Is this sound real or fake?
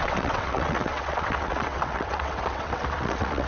fake